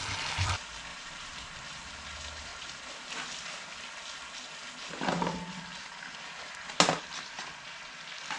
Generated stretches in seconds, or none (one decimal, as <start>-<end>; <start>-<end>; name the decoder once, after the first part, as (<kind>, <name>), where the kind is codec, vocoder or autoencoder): 0.9-1.5 (vocoder, BigVGAN v2)